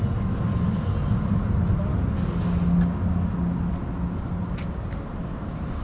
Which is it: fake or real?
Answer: real